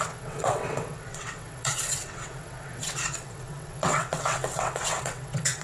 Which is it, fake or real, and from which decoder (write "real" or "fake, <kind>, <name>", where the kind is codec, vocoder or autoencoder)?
fake, vocoder, WaveNeXt